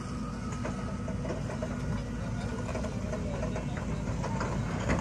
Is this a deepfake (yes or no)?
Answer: no